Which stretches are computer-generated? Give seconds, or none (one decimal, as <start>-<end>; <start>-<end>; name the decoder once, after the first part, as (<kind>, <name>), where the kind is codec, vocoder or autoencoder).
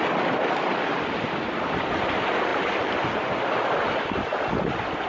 none